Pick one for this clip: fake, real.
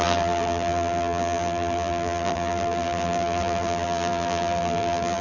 fake